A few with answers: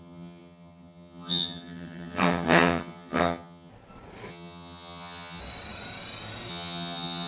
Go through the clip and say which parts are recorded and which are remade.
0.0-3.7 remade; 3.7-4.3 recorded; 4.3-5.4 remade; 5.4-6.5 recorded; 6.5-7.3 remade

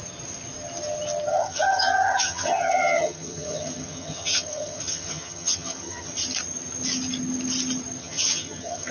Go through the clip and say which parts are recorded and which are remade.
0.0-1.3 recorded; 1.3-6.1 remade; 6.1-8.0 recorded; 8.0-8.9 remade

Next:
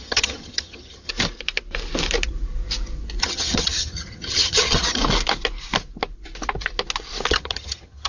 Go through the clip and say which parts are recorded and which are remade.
0.0-1.1 remade; 1.1-3.2 recorded; 3.2-5.0 remade; 5.0-7.3 recorded; 7.3-8.1 remade